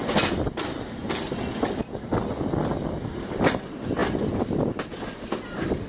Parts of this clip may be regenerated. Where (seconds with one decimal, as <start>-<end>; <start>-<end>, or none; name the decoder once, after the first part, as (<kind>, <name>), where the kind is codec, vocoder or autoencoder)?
none

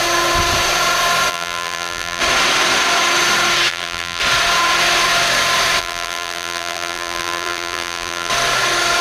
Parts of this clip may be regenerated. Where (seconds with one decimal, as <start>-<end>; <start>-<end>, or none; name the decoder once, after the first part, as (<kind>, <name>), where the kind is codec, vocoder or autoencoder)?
1.3-2.2 (vocoder, BigVGAN v2); 3.7-4.2; 5.8-8.3

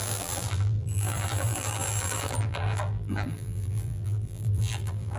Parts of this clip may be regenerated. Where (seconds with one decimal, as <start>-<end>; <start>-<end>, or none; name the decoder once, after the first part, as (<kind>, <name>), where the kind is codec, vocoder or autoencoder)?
0.0-5.2 (vocoder, BigVGAN v2)

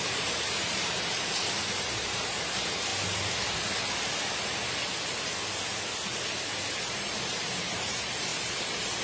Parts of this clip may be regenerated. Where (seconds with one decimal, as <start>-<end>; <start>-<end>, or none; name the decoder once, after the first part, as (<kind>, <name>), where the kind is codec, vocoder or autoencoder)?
0.0-2.9 (vocoder, BigVGAN v2); 6.5-9.0